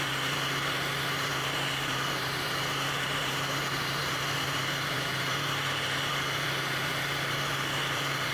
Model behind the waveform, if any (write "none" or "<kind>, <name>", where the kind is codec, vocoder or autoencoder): vocoder, BigVGAN v2